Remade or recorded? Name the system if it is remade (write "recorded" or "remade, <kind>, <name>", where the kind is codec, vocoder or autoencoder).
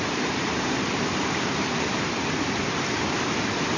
remade, vocoder, BigVGAN v2